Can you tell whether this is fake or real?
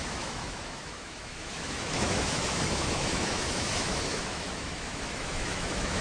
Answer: fake